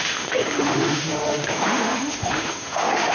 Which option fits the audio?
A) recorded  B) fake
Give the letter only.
B